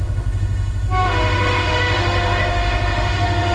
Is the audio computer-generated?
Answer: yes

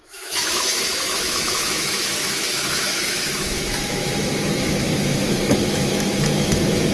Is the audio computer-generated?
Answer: yes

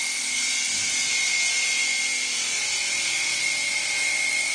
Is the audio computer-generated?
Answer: no